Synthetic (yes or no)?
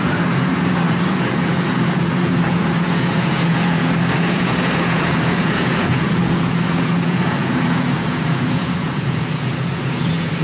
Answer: yes